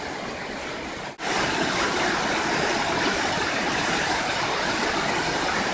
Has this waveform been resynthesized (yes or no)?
no